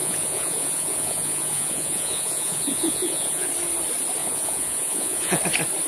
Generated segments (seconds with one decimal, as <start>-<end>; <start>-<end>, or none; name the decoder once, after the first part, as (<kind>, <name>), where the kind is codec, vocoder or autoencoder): 0.0-3.5 (vocoder, Vocos); 4.2-5.4